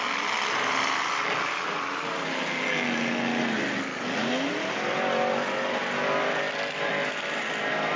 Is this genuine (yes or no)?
yes